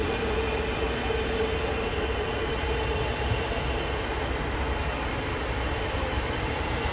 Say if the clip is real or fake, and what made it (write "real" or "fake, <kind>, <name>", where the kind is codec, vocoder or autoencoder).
real